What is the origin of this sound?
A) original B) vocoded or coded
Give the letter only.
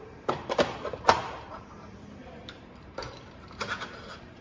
B